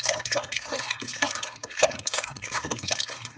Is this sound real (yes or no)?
no